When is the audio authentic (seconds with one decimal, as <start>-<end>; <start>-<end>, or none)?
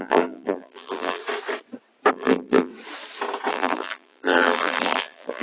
1.2-2.1; 2.7-3.5